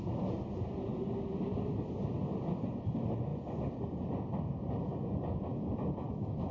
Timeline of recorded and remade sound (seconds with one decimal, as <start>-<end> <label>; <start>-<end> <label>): 0.0-5.5 recorded; 5.5-6.5 remade